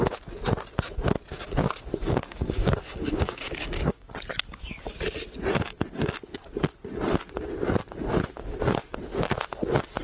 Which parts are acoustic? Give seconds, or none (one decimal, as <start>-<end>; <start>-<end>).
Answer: 0.0-1.3; 4.1-10.0